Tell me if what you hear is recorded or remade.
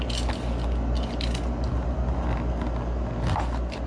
recorded